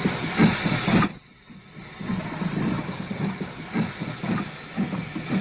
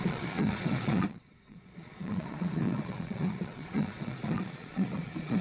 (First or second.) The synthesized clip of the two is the second